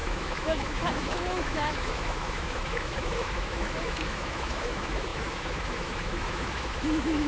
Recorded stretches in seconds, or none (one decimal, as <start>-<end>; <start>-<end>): none